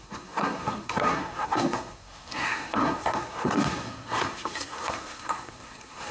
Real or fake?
fake